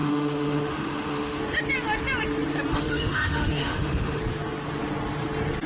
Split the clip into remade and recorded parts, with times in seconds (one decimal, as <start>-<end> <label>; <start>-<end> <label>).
0.0-1.4 remade; 1.4-2.7 recorded; 2.7-4.2 remade; 4.2-5.7 recorded